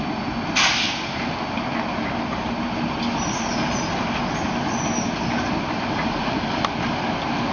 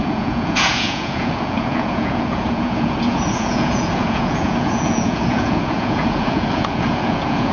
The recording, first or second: first